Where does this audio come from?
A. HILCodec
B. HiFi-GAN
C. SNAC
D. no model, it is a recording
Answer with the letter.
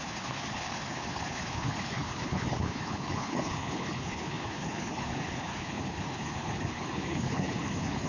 A